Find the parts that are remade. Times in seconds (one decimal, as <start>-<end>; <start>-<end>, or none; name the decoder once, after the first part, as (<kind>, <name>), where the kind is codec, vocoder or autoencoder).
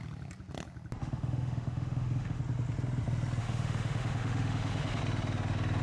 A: 1.0-2.4 (autoencoder, DAC-VAE); 3.4-5.0